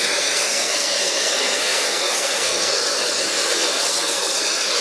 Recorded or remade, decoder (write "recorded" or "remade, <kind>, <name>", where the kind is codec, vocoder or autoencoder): remade, codec, SNAC